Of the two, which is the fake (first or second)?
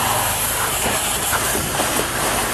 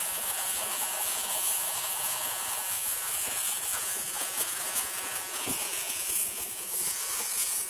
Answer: second